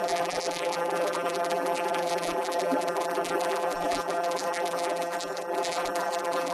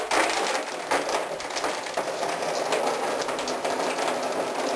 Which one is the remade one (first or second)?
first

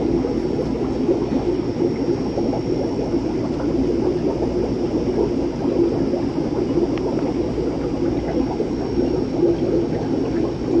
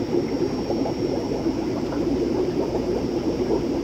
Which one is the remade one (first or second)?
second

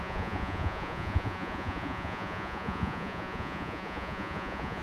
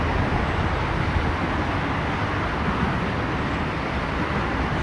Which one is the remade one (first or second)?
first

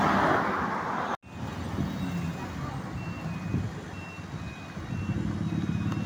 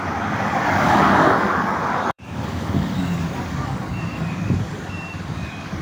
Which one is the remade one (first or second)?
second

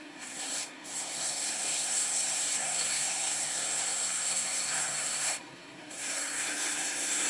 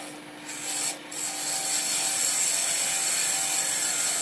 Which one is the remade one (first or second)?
first